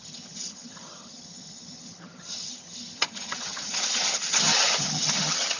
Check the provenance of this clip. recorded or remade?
remade